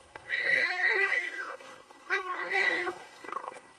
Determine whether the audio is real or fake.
fake